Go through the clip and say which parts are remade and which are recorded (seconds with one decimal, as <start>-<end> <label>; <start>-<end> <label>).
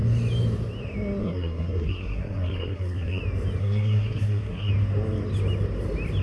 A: 0.0-1.2 recorded; 1.2-3.2 remade; 3.2-3.6 recorded; 3.6-4.7 remade; 4.7-6.2 recorded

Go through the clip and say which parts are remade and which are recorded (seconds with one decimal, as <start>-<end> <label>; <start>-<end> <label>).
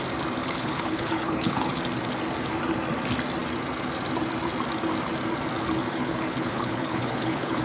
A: 0.0-0.4 recorded; 0.4-1.8 remade; 1.8-5.8 recorded; 5.8-7.6 remade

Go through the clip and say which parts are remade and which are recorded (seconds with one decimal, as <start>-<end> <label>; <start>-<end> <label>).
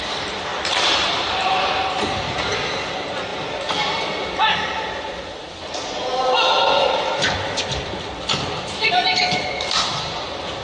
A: 0.0-3.3 remade; 3.3-4.4 recorded; 4.4-5.4 remade; 5.4-6.1 recorded; 6.1-10.6 remade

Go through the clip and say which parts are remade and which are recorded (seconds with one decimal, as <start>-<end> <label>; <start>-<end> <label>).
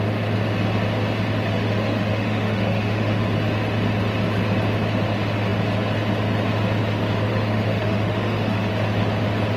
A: 0.0-1.5 recorded; 1.5-3.2 remade; 3.2-7.3 recorded; 7.3-8.7 remade; 8.7-9.6 recorded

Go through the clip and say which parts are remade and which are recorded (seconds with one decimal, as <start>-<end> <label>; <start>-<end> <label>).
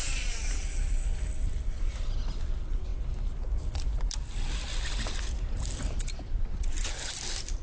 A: 0.0-7.6 recorded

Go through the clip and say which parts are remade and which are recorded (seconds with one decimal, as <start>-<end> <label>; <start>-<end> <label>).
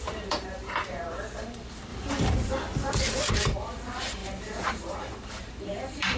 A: 0.0-1.9 remade; 1.9-3.3 recorded; 3.3-4.2 remade; 4.2-4.7 recorded; 4.7-6.2 remade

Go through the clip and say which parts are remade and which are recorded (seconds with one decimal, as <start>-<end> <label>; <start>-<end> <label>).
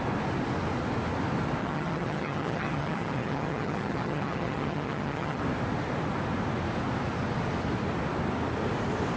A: 0.0-1.6 recorded; 1.6-5.4 remade; 5.4-9.2 recorded